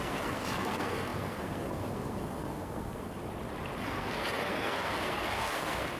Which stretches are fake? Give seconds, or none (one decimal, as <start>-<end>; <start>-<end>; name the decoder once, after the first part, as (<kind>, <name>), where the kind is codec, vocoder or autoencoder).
0.0-3.2 (codec, SNAC); 3.8-6.0